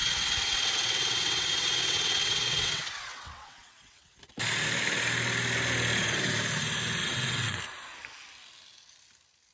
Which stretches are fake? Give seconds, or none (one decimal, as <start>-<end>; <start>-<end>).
0.0-4.2; 7.0-7.6